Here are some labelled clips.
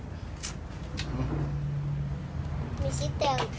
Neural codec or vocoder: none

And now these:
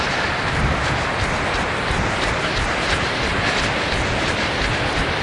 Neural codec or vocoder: vocoder, BigVGAN v2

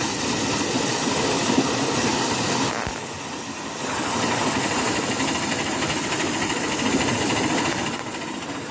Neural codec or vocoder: none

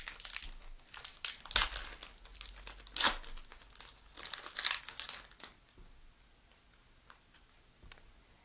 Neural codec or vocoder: none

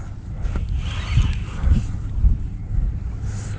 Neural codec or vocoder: none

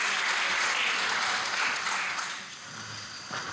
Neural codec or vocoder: none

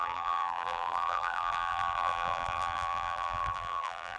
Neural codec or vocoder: vocoder, BigVGAN v2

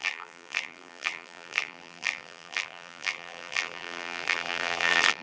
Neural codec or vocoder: vocoder, BigVGAN v2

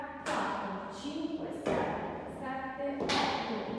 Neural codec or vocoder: none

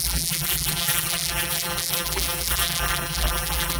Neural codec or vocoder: vocoder, BigVGAN v2